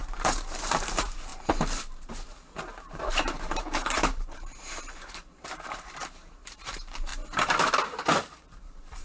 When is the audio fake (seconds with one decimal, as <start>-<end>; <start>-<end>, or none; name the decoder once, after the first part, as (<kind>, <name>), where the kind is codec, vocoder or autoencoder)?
0.0-1.3 (vocoder, BigVGAN v2); 2.1-7.1; 8.6-9.0